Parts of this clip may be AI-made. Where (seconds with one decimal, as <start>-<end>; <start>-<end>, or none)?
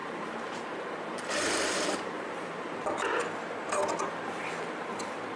0.0-3.2